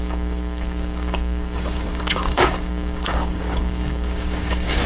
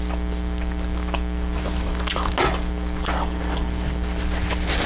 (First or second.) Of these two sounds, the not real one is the first